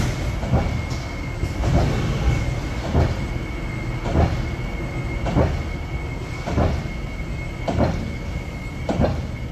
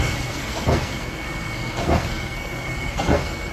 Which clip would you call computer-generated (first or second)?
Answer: second